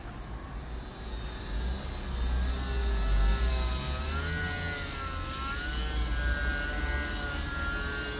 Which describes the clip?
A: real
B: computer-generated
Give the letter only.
A